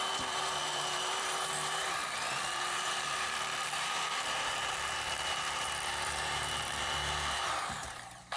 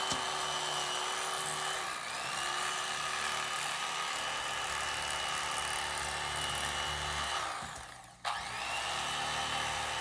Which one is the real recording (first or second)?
second